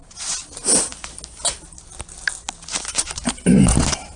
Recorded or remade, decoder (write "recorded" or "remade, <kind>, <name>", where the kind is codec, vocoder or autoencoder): recorded